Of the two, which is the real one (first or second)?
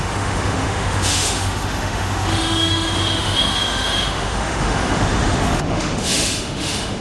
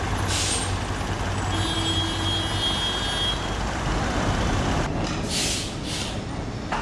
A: second